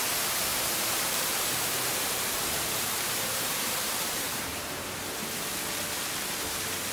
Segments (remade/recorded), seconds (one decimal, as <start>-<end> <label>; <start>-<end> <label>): 0.0-0.5 recorded; 0.5-4.6 remade; 4.6-6.9 recorded